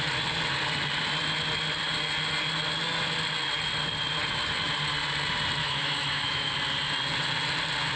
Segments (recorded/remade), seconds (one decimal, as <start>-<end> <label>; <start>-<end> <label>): 0.0-5.6 recorded; 5.6-6.5 remade; 6.5-8.0 recorded